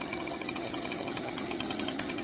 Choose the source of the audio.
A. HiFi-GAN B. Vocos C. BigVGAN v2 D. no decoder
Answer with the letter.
A